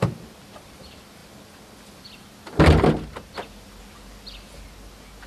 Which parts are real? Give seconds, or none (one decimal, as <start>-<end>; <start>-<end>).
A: 0.0-5.3